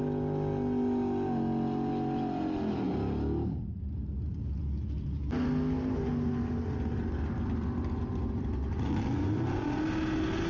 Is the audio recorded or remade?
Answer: recorded